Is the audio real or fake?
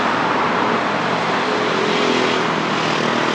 real